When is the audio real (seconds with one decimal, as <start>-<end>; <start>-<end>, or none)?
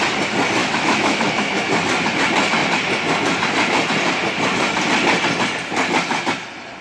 0.0-0.6; 1.7-6.8